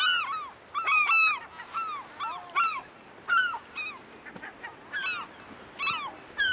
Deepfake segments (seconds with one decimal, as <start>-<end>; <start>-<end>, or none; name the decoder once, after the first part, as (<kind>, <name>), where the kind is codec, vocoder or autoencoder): none